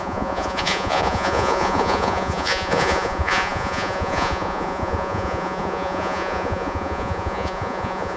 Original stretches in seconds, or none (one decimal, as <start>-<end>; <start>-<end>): none